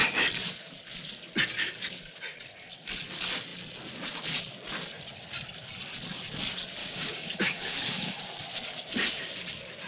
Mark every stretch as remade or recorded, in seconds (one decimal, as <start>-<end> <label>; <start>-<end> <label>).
0.0-6.8 recorded; 6.8-8.2 remade; 8.2-9.9 recorded